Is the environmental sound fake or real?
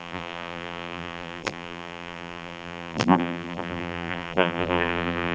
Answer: fake